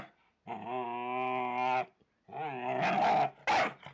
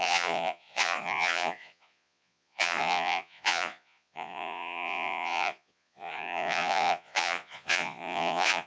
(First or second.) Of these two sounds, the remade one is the second